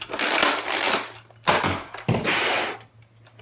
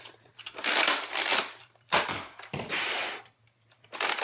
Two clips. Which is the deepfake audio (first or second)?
second